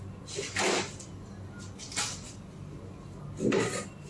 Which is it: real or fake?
real